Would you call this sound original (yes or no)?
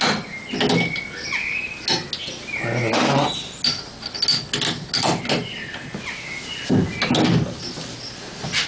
yes